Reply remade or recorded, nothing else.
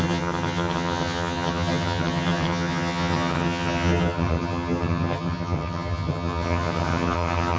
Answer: remade